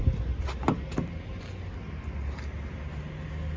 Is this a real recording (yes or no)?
yes